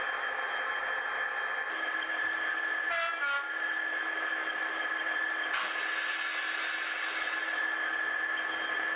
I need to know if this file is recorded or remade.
recorded